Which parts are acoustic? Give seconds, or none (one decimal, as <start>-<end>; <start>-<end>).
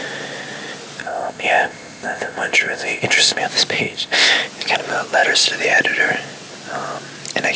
0.0-1.0; 3.4-3.8; 4.3-7.6